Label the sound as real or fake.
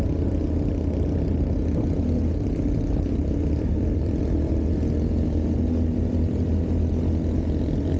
real